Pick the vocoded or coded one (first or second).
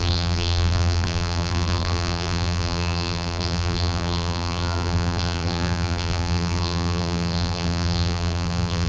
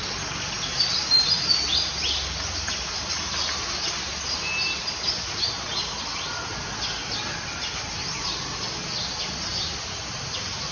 first